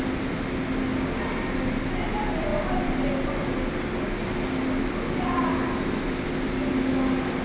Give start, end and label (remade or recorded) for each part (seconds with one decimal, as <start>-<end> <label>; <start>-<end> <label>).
0.0-7.4 recorded